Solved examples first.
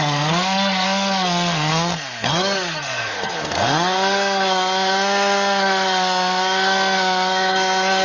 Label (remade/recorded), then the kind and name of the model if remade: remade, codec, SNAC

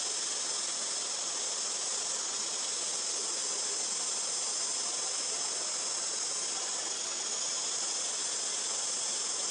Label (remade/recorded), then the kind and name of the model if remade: recorded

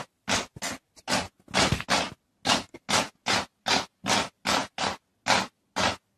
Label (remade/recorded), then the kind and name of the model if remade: recorded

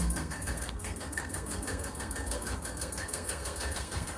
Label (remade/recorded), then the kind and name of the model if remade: remade, codec, SNAC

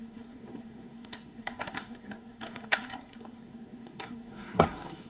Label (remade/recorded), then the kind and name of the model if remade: remade, codec, SNAC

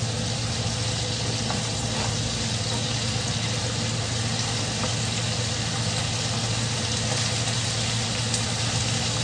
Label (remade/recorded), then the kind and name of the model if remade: recorded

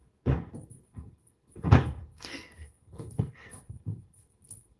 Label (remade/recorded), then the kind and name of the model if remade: remade, codec, SNAC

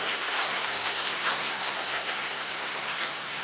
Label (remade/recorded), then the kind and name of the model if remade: remade, codec, SNAC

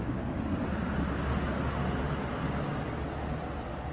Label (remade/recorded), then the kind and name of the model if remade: recorded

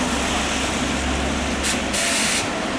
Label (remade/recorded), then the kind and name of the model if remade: recorded